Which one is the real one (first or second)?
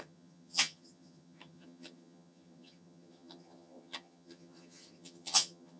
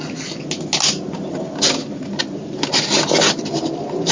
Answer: second